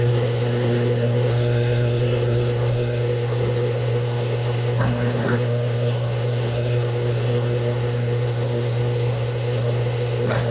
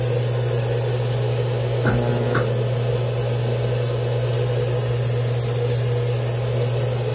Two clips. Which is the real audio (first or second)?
second